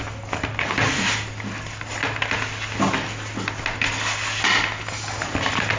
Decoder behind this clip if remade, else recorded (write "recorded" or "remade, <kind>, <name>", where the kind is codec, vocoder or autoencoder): recorded